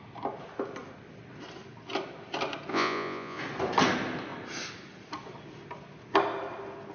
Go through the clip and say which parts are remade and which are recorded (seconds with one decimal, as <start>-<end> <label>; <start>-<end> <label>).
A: 0.0-2.7 recorded; 2.7-3.4 remade; 3.4-6.9 recorded